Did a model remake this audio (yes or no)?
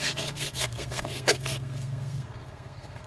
yes